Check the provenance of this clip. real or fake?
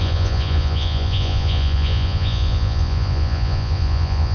fake